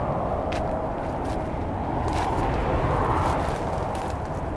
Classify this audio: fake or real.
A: real